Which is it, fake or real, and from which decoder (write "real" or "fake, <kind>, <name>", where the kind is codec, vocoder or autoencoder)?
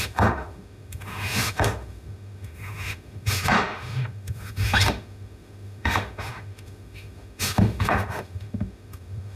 fake, autoencoder, DAC-VAE